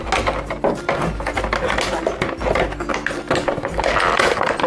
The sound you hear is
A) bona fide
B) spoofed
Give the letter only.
A